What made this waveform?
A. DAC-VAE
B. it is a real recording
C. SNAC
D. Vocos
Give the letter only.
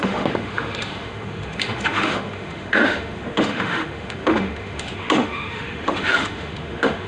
A